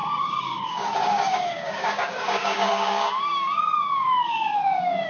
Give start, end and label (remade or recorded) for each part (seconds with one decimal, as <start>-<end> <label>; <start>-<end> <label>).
0.0-5.1 remade